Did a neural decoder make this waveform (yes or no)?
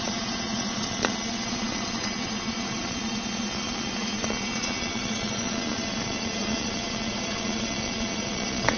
yes